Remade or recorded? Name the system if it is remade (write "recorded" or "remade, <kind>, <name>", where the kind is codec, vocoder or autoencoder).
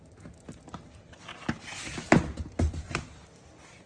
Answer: recorded